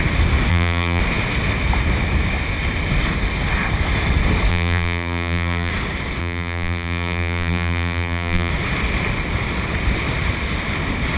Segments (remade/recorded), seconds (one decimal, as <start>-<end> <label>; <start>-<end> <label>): 0.0-0.5 recorded; 0.5-1.0 remade; 1.0-4.5 recorded; 4.5-5.7 remade; 5.7-6.2 recorded; 6.2-8.5 remade; 8.5-11.2 recorded